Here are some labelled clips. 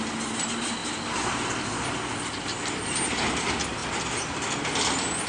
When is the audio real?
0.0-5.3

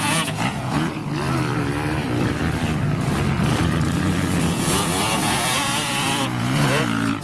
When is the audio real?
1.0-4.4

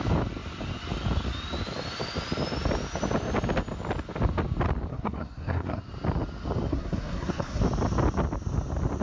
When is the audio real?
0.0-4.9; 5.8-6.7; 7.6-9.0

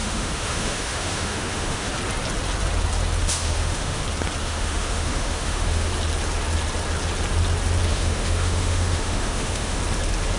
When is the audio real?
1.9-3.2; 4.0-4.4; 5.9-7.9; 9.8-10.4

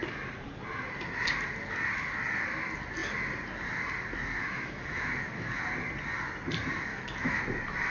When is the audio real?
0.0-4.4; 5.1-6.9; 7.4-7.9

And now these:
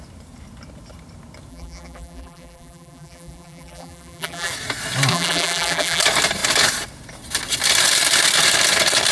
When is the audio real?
0.0-1.5; 4.5-5.1; 6.0-9.1